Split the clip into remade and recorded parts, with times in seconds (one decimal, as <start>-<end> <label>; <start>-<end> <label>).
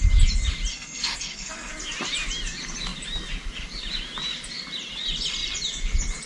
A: 0.0-0.7 recorded; 0.7-1.7 remade; 1.7-6.3 recorded